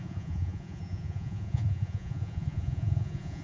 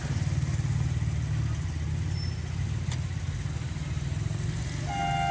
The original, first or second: second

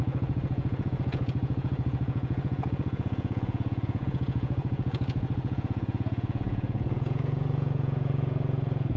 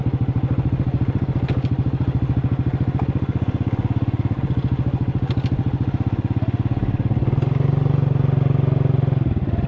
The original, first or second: second